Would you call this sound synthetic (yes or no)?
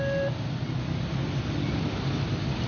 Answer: no